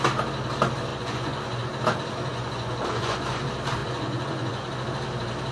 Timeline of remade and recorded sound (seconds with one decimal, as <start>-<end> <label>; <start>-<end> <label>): 0.0-0.9 recorded; 0.9-1.7 remade; 1.7-2.3 recorded; 2.3-3.4 remade; 3.4-3.8 recorded; 3.8-4.8 remade; 4.8-5.5 recorded